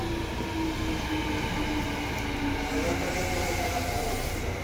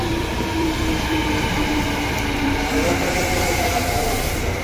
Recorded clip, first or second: first